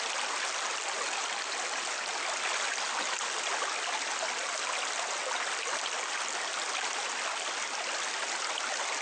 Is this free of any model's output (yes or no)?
yes